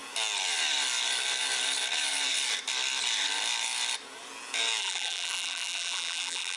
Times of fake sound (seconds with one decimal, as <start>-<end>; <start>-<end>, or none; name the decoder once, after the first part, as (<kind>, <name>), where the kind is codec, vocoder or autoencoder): 4.8-6.6 (vocoder, BigVGAN v2)